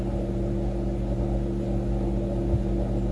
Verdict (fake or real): real